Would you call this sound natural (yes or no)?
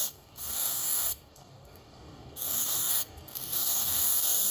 no